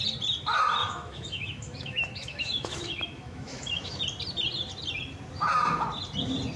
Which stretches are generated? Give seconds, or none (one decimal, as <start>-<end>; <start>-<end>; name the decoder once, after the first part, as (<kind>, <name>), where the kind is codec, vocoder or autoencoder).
0.8-4.0 (autoencoder, DAC-VAE)